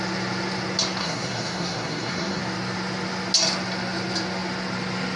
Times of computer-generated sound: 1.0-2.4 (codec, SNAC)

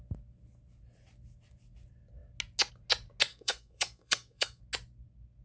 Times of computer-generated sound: 3.3-4.6 (codec, SNAC)

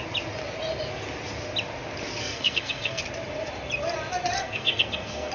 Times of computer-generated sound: 2.2-3.0 (codec, SNAC); 4.4-5.3

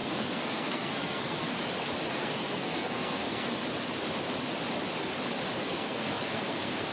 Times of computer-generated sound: 0.0-1.5 (codec, SNAC); 2.1-3.6; 5.6-6.9

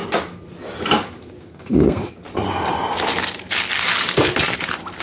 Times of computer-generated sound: 1.4-2.0 (codec, SNAC)

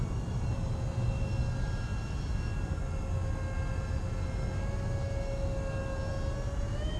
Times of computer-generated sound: none

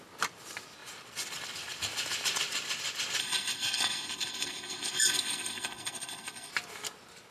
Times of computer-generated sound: 3.2-6.5 (codec, SNAC)

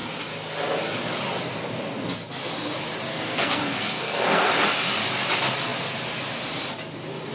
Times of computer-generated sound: 3.1-4.5 (codec, SNAC)